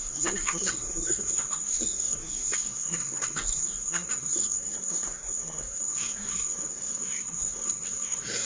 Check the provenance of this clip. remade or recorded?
remade